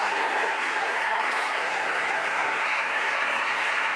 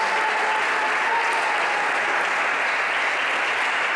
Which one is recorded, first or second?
second